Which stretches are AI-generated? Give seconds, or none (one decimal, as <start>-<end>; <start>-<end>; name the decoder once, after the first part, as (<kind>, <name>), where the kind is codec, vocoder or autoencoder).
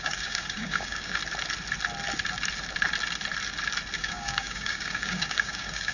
0.0-1.2 (codec, DAC); 4.0-5.9